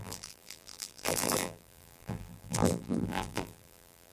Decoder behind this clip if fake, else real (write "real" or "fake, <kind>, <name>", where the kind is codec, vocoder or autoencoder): fake, vocoder, BigVGAN v2